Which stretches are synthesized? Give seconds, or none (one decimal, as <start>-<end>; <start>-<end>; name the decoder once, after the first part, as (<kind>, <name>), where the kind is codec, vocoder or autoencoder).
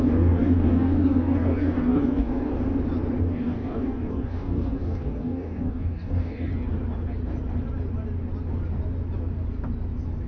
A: 0.0-2.5 (codec, DAC); 3.2-6.5